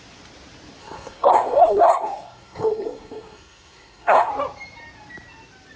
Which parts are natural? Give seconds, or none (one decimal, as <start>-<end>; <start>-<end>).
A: 0.0-0.8; 4.3-5.8